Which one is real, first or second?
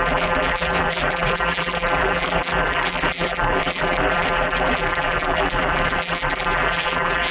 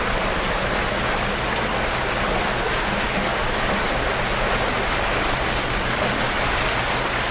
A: second